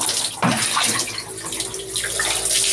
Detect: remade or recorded recorded